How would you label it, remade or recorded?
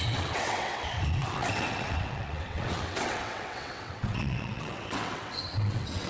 remade